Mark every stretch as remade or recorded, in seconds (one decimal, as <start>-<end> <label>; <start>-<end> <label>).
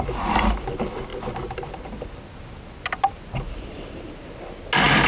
0.0-5.1 recorded